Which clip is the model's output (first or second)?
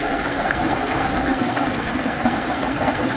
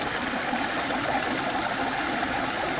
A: first